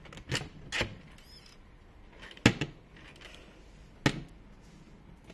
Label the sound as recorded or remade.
recorded